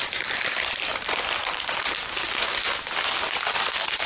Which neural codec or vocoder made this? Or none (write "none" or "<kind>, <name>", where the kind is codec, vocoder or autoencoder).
none